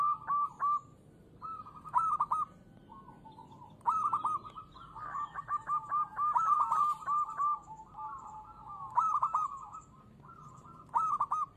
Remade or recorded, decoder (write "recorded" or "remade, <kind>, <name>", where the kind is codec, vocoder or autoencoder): recorded